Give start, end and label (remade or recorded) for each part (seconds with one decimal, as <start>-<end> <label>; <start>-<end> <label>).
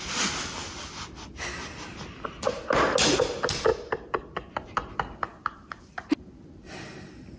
0.0-7.4 recorded